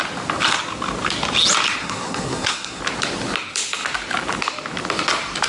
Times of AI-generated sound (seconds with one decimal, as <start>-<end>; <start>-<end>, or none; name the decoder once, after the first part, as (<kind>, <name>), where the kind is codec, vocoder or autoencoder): 1.8-2.8 (codec, SNAC)